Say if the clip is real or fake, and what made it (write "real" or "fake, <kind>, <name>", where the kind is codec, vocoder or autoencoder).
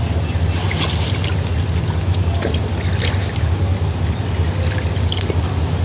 real